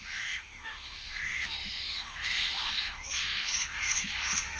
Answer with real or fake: fake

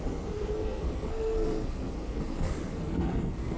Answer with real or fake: fake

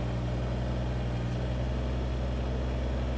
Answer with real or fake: real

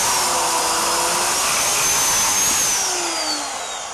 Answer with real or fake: real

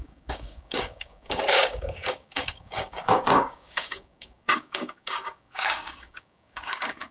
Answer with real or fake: fake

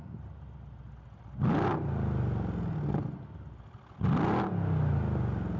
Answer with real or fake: real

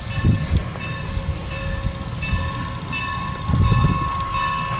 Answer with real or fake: real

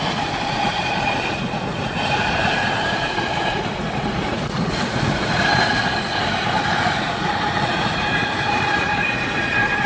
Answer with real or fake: fake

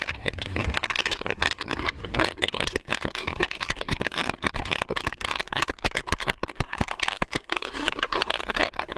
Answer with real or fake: fake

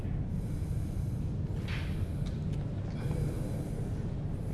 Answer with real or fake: real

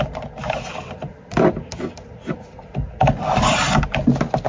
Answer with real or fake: real